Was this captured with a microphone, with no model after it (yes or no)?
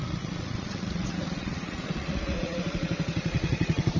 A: no